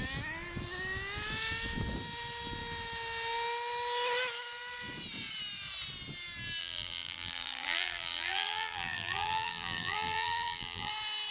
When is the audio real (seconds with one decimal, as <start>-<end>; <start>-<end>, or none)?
0.0-6.6; 10.9-11.3